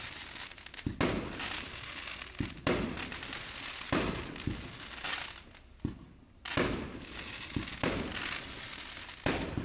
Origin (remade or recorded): recorded